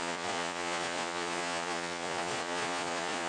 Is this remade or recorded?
remade